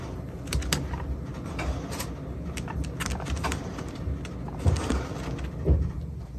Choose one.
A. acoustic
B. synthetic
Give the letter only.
A